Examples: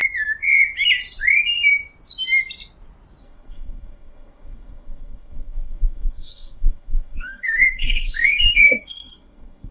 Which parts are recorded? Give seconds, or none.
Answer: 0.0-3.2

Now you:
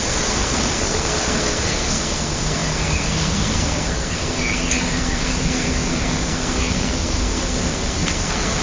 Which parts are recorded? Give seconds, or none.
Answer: none

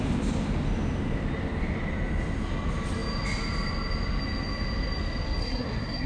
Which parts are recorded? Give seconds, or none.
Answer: 0.0-5.4

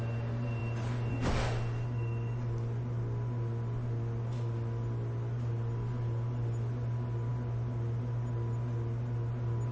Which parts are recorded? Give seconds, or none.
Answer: 0.0-9.7